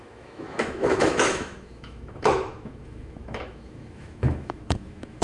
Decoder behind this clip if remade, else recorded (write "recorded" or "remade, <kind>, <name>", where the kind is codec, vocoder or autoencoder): remade, autoencoder, DAC-VAE